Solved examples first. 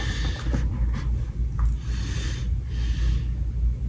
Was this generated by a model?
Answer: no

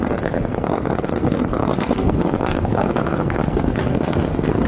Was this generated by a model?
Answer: yes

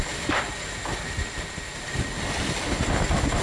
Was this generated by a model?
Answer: no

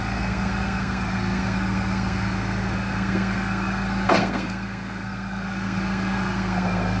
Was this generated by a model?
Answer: yes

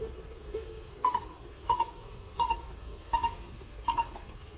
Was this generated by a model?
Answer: yes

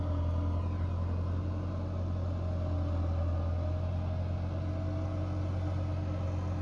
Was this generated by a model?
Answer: no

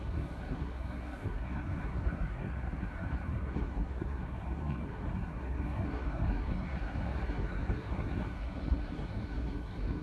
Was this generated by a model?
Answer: yes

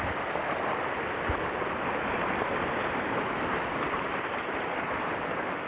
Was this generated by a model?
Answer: no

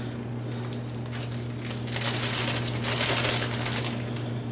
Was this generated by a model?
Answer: no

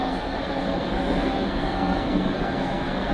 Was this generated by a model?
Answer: yes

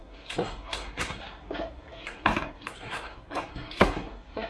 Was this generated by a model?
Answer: yes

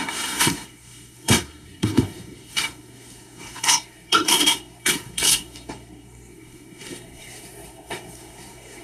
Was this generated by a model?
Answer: yes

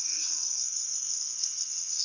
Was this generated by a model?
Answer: yes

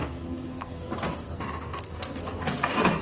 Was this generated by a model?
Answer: yes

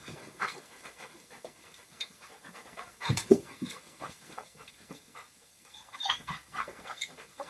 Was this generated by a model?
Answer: yes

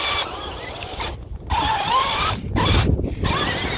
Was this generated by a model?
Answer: no